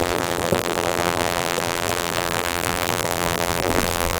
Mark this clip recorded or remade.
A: remade